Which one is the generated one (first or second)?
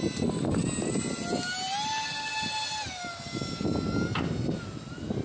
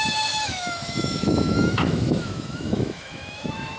second